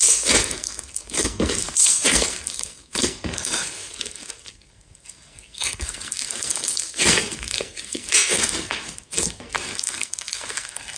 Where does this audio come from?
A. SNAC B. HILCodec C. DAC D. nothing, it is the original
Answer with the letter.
A